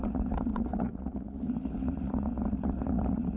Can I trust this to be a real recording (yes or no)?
no